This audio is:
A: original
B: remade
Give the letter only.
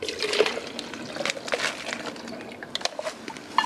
A